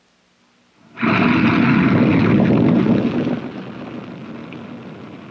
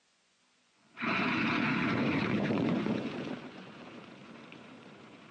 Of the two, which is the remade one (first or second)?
second